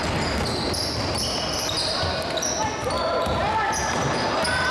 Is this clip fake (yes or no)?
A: no